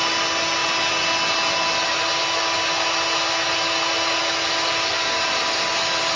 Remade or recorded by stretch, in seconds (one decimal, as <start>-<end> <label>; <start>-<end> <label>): 0.0-6.2 recorded